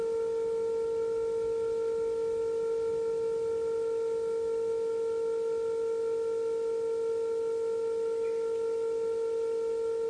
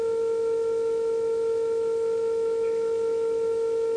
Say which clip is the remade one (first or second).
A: second